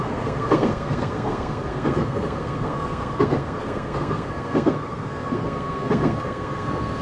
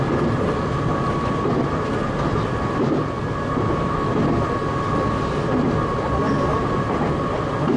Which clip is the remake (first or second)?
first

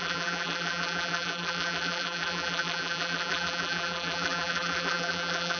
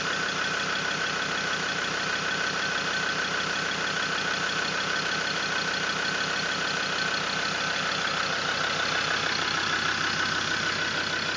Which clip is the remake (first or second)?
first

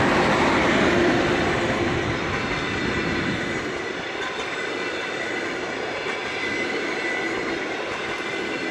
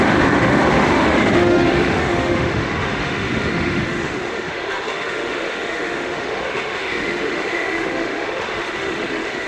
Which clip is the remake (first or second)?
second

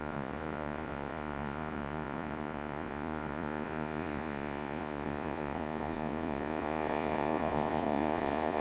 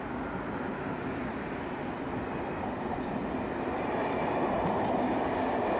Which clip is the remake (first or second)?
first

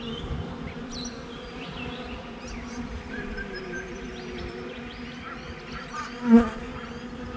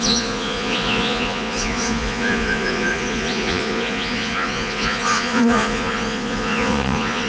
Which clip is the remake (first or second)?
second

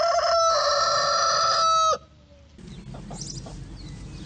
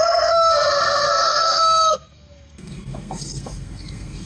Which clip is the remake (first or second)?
second